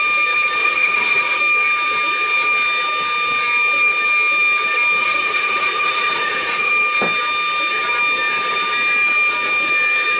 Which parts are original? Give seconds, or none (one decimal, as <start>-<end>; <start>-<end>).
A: 0.0-0.6; 1.4-5.0; 6.7-10.2